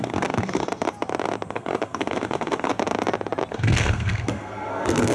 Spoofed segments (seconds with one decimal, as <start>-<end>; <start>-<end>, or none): 0.0-0.7; 1.5-2.7; 3.5-5.1